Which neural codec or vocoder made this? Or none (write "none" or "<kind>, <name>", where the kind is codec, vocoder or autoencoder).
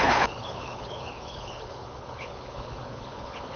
codec, HILCodec